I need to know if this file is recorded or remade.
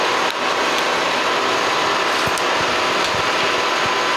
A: recorded